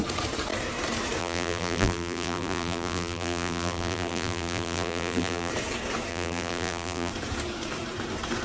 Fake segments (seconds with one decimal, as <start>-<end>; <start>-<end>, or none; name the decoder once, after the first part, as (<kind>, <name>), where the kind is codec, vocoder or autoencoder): 1.2-5.5 (vocoder, BigVGAN v2); 6.1-7.1